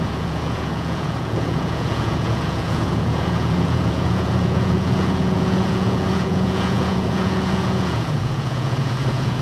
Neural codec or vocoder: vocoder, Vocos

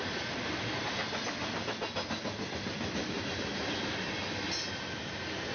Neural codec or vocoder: none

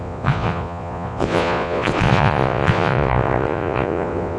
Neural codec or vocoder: vocoder, Vocos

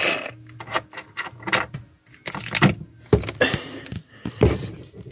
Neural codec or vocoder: none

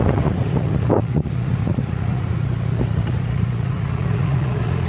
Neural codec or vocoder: vocoder, Vocos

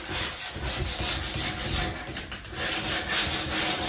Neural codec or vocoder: none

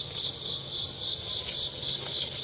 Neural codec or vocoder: none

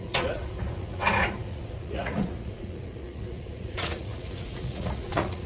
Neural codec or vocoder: vocoder, Vocos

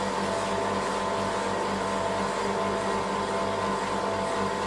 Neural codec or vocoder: none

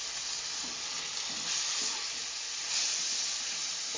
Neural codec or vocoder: none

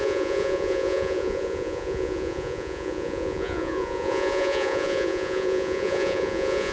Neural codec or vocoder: vocoder, Vocos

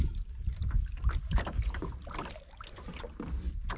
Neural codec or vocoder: none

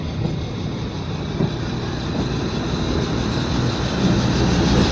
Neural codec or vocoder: none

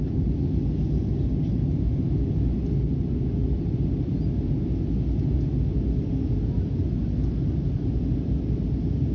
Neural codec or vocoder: none